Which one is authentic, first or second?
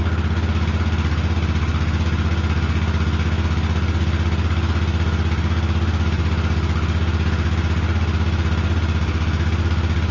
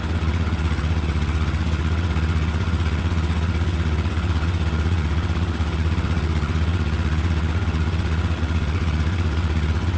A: first